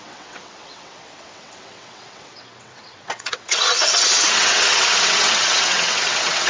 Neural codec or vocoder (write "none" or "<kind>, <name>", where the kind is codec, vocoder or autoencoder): vocoder, WaveNeXt